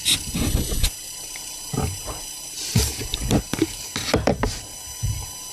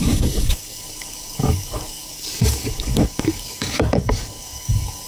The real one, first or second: first